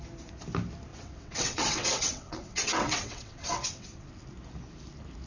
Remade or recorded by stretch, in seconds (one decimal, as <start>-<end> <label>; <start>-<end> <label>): 0.0-0.9 recorded; 0.9-4.1 remade; 4.1-5.3 recorded